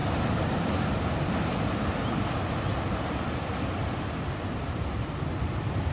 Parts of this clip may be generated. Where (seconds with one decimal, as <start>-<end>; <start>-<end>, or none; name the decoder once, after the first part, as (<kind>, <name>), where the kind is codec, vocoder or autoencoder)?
none